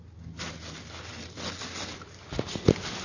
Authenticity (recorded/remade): recorded